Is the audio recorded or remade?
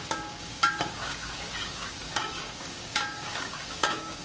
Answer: remade